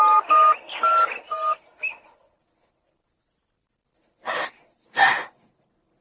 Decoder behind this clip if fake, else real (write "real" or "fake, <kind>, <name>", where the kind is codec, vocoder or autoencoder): real